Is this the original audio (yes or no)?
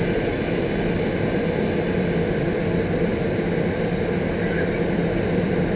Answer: yes